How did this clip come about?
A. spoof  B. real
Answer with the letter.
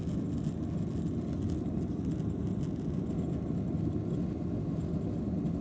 B